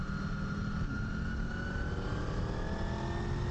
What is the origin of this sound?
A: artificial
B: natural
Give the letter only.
B